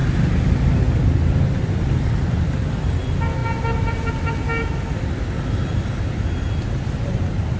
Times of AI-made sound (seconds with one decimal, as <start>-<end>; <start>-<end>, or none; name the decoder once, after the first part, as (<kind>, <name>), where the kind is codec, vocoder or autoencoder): none